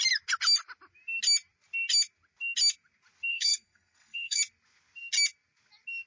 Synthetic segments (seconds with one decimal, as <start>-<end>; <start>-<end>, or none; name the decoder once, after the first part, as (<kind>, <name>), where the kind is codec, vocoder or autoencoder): 3.3-4.4 (codec, SNAC)